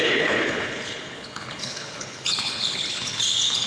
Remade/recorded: remade